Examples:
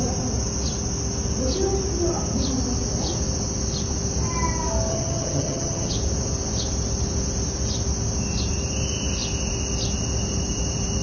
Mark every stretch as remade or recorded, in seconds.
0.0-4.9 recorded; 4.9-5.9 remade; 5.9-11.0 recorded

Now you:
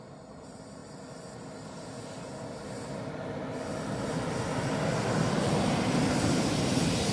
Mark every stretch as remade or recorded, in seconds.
0.0-0.8 remade; 0.8-5.1 recorded; 5.1-7.1 remade

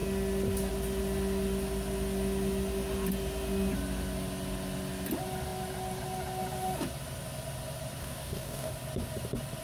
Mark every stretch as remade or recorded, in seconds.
0.0-8.0 recorded; 8.0-8.7 remade; 8.7-9.6 recorded

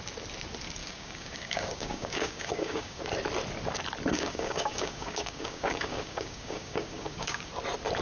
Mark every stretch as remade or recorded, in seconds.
0.0-0.8 recorded; 0.8-3.0 remade; 3.0-4.1 recorded; 4.1-7.5 remade; 7.5-8.0 recorded

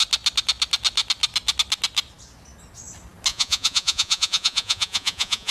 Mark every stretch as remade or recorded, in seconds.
0.0-3.3 recorded; 3.3-5.5 remade

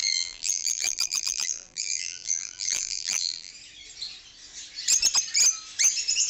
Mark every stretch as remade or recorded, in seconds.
0.0-3.5 remade; 3.5-6.3 recorded